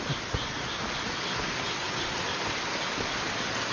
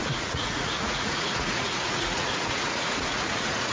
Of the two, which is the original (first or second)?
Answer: first